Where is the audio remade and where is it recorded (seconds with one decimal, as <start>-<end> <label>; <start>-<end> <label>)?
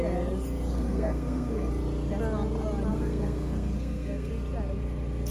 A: 0.0-0.7 recorded; 0.7-1.7 remade; 1.7-2.9 recorded; 2.9-4.3 remade; 4.3-5.3 recorded